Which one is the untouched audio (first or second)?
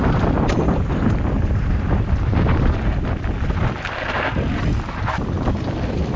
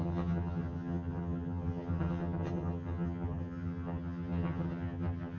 first